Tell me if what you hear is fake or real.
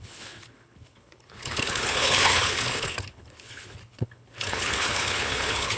fake